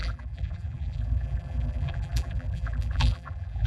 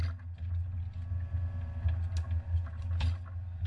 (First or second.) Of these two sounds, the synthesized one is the first